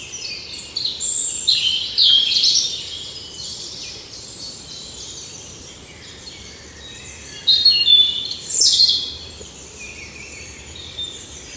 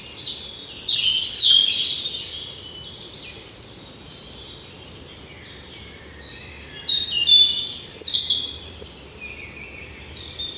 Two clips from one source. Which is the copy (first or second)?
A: first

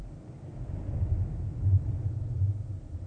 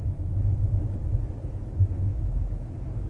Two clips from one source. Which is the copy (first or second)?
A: second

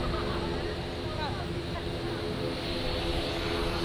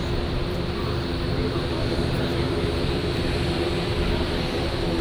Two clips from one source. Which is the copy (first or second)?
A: second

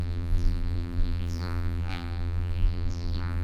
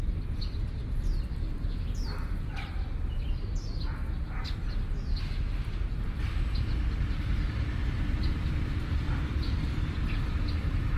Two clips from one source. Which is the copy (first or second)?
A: first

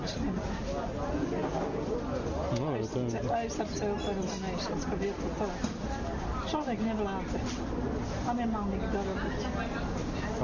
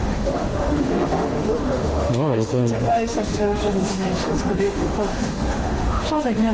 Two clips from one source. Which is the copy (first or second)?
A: second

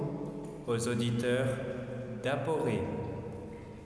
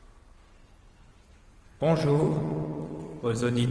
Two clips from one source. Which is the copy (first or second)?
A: second